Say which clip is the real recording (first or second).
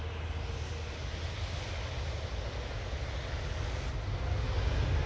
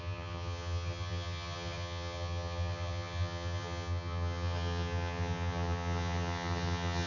first